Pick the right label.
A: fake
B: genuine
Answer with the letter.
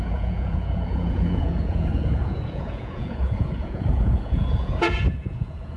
A